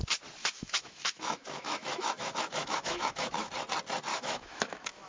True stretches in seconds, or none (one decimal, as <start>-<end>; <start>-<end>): 0.0-0.4; 3.5-4.1